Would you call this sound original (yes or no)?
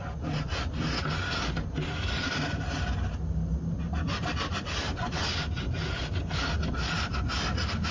yes